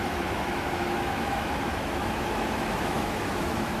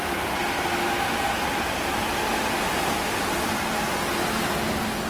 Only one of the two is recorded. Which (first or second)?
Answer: second